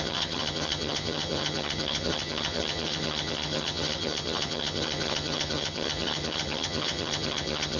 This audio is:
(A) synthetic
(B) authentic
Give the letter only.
A